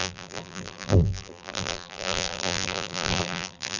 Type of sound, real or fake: fake